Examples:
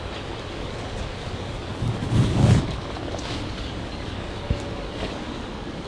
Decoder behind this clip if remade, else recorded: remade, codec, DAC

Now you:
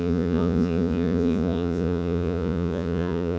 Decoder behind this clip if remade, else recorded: remade, vocoder, Vocos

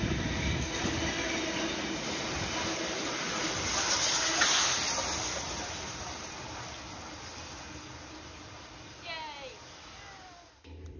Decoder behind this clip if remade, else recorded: recorded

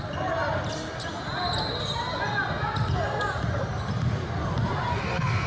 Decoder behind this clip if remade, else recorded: recorded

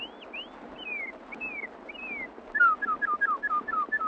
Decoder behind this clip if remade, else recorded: recorded